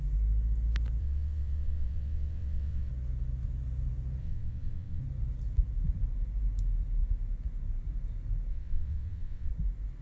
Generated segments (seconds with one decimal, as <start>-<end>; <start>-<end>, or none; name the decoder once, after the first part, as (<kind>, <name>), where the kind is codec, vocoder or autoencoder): 1.0-2.9 (vocoder, WaveNeXt); 4.2-5.0; 8.5-9.5